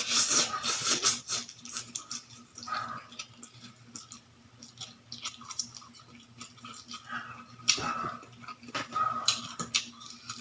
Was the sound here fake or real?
fake